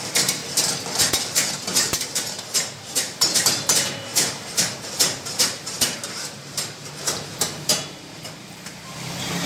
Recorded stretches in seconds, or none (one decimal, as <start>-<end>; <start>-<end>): 0.4-1.1